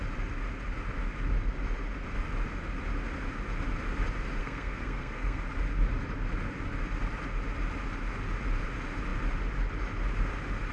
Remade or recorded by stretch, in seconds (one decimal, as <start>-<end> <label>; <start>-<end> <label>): 0.0-4.4 recorded; 4.4-5.4 remade; 5.4-10.7 recorded